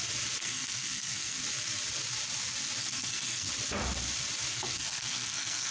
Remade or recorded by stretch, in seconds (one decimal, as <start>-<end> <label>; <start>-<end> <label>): 0.0-0.4 recorded; 0.4-1.4 remade; 1.4-2.8 recorded; 2.8-3.5 remade; 3.5-4.5 recorded; 4.5-5.7 remade